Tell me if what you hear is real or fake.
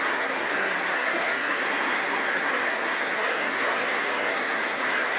fake